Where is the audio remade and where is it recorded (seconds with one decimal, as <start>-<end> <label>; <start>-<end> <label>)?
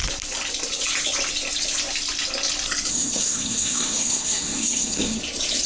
0.0-2.9 recorded; 2.9-5.2 remade; 5.2-5.7 recorded